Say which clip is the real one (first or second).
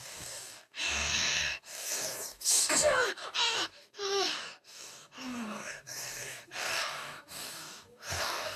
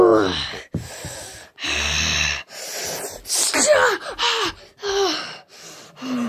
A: second